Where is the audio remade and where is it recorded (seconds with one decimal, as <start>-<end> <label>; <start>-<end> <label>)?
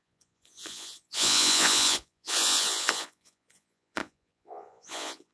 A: 0.0-5.3 remade